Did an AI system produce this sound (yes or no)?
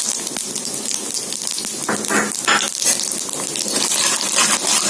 no